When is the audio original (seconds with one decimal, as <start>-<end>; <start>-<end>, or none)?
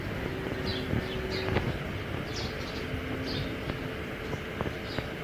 0.0-5.2